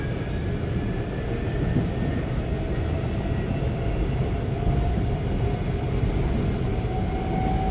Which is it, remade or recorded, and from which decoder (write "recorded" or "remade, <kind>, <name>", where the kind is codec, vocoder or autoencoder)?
recorded